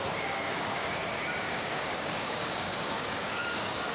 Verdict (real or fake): fake